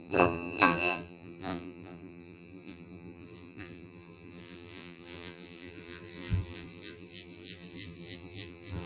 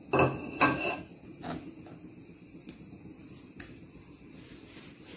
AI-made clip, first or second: first